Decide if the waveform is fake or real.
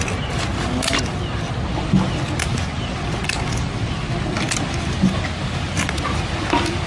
real